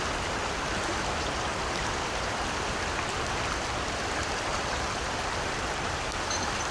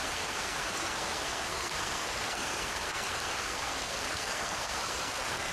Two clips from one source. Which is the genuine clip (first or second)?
first